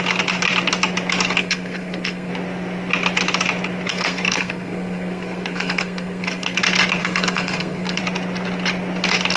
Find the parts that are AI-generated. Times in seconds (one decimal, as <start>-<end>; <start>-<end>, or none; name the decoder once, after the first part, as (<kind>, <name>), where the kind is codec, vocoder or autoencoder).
1.4-2.3 (codec, SNAC); 3.9-6.6; 7.0-8.0